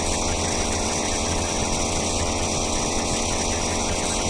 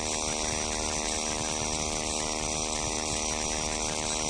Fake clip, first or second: first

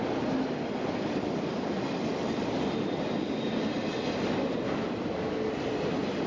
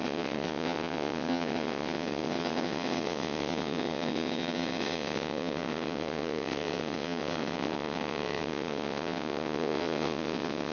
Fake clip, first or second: second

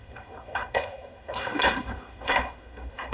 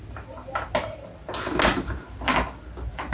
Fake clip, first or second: first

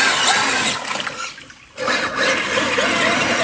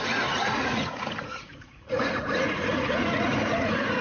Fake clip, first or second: second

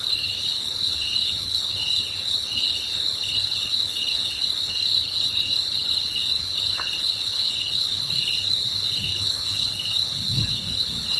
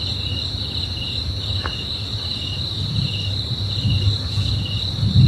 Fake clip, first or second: first